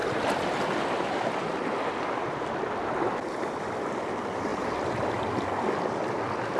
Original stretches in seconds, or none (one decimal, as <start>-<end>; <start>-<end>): 0.0-6.6